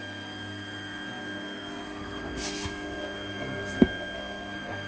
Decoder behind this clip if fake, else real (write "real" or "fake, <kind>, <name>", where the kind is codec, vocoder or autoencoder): fake, codec, SNAC